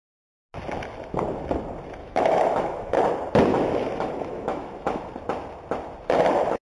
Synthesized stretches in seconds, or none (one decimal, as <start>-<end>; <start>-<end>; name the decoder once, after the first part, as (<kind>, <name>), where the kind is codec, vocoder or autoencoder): 2.0-3.0 (autoencoder, DAC-VAE); 3.5-5.1